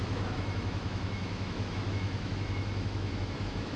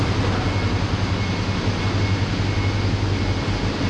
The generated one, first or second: first